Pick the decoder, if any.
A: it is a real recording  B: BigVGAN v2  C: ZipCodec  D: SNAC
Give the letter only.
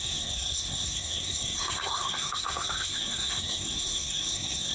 D